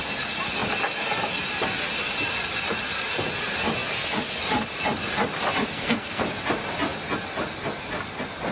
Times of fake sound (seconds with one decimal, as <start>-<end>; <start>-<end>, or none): 5.7-6.2